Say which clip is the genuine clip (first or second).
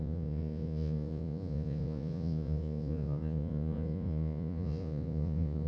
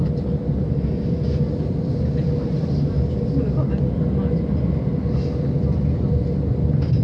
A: second